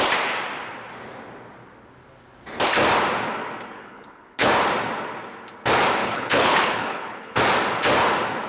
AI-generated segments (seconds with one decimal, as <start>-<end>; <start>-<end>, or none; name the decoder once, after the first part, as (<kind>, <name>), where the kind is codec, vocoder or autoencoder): 3.8-4.5 (codec, HILCodec); 6.0-7.4